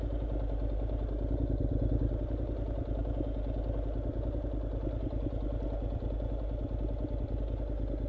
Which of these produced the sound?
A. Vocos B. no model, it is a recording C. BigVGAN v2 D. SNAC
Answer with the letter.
B